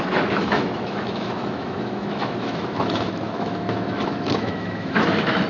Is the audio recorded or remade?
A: remade